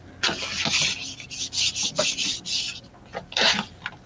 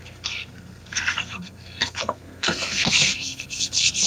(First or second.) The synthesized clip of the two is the second